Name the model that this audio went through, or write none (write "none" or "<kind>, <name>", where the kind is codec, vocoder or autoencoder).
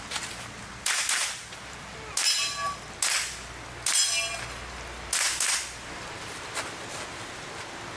none